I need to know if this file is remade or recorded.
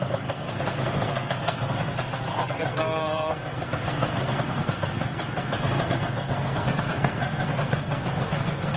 remade